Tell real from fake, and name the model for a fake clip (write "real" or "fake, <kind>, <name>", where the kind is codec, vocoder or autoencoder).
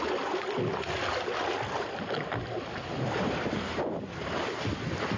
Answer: real